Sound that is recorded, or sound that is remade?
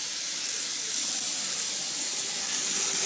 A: recorded